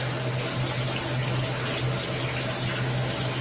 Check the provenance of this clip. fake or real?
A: real